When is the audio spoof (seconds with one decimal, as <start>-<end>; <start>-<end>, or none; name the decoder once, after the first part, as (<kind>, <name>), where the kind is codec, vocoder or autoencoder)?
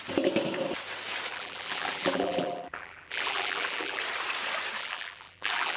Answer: 1.3-4.0 (vocoder, BigVGAN v2); 4.8-5.8